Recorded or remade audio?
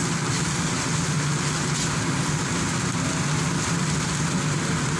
recorded